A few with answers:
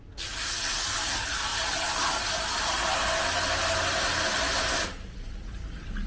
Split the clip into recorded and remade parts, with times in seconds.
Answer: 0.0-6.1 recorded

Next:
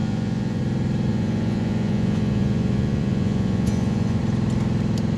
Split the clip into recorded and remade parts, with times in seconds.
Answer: 0.0-0.6 remade; 0.6-1.1 recorded; 1.1-4.2 remade; 4.2-5.2 recorded

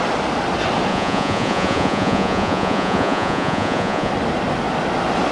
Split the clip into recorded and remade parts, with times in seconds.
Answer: 0.0-0.9 recorded; 0.9-4.1 remade; 4.1-5.3 recorded

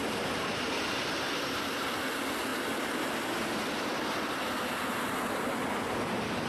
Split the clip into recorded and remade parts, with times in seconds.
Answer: 0.0-6.5 recorded